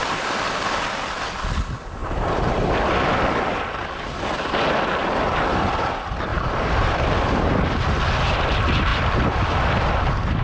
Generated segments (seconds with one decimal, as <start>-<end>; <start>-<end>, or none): 2.0-2.7; 6.3-7.6